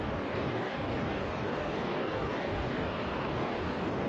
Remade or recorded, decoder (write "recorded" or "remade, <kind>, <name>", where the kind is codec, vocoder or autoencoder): remade, codec, DAC